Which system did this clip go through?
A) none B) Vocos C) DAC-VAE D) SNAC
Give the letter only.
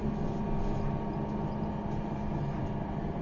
A